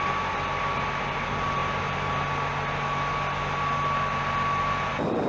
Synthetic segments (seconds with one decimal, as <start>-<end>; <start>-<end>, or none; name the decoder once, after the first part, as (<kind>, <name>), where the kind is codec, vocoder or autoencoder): none